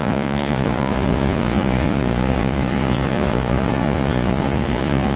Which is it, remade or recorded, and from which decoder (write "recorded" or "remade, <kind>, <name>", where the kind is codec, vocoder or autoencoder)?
remade, vocoder, Vocos